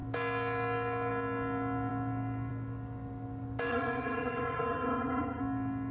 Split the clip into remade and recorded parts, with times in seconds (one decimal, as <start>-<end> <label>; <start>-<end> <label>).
0.0-3.7 recorded; 3.7-5.4 remade; 5.4-5.9 recorded